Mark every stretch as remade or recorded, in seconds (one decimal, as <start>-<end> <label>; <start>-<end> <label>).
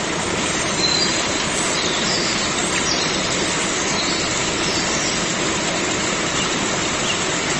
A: 0.0-2.6 remade; 2.6-5.3 recorded; 5.3-7.6 remade